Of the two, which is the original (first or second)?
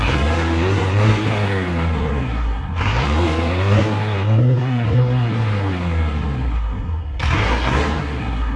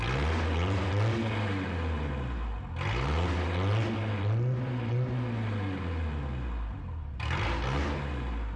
second